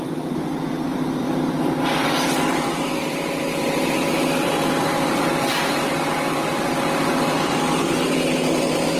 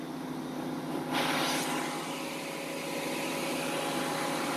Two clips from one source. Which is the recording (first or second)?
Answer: second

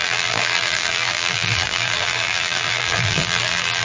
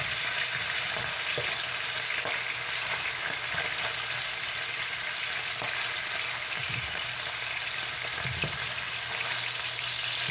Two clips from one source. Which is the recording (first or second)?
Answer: second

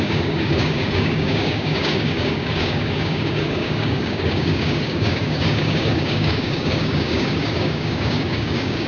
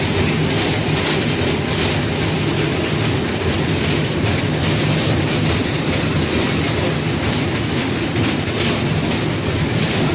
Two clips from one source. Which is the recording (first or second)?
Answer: second